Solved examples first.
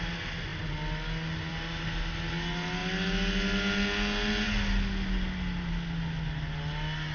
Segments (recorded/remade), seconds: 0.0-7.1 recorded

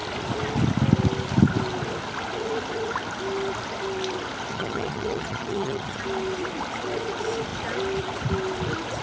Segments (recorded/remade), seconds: 0.0-4.5 recorded; 4.5-6.0 remade; 6.0-9.0 recorded

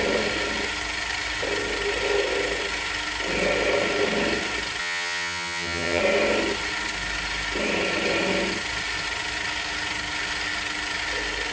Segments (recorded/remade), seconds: 0.0-4.8 recorded; 4.8-6.0 remade; 6.0-11.5 recorded

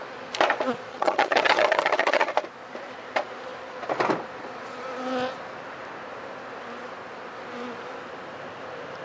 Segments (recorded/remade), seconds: 0.0-0.9 recorded; 0.9-2.3 remade; 2.3-9.0 recorded